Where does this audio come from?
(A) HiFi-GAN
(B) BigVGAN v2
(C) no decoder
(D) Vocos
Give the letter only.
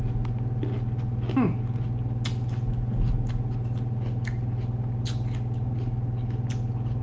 C